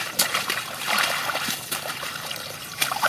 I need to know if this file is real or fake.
fake